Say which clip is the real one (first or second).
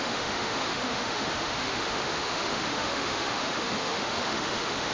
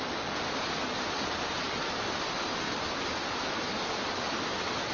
second